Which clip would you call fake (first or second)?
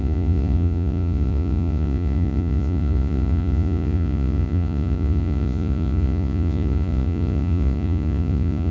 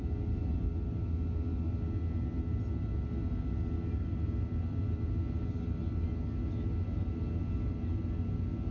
first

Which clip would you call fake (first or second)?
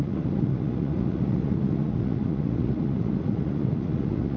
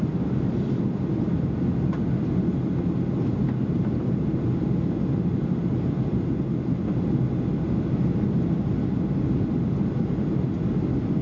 first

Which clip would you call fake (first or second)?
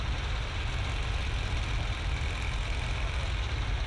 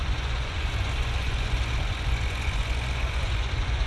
second